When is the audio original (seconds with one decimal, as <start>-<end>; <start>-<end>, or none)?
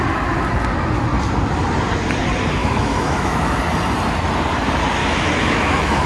0.0-2.6; 3.6-5.0